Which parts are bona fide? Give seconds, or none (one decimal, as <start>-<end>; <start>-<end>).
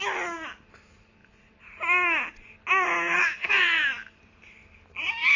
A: 0.0-5.4